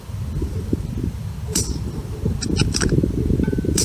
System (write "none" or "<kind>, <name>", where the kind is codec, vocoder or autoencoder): vocoder, BigVGAN v2